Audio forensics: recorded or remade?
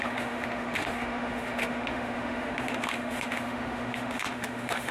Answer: remade